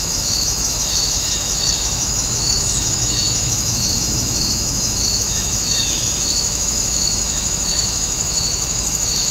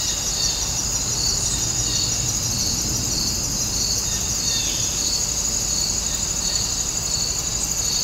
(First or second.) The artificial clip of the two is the first